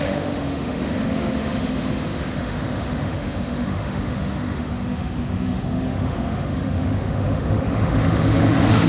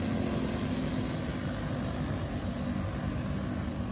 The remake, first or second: first